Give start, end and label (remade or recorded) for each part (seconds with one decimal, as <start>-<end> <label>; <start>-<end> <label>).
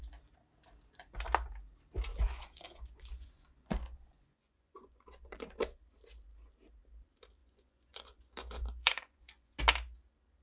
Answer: 0.0-2.1 recorded; 2.1-5.8 remade; 5.8-7.4 recorded; 7.4-9.6 remade; 9.6-10.4 recorded